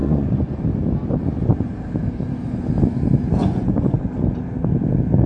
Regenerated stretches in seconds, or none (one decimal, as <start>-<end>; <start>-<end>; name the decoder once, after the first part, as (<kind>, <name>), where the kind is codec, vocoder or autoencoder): 0.0-0.6 (vocoder, Vocos); 1.2-1.7; 3.4-4.0